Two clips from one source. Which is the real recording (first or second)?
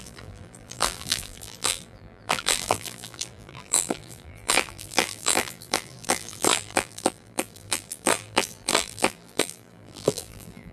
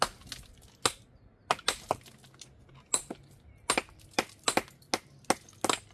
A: second